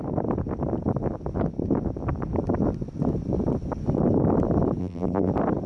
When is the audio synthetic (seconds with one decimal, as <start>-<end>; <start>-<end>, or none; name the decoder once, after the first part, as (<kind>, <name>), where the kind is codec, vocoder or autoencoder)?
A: 4.8-5.3 (vocoder, BigVGAN v2)